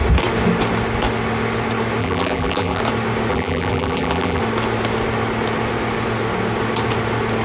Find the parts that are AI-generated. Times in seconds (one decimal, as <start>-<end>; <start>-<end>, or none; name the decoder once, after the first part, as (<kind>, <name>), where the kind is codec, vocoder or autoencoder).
2.0-2.8 (vocoder, BigVGAN v2); 3.3-4.4